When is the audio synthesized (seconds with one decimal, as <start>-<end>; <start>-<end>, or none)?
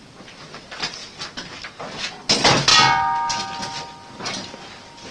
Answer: none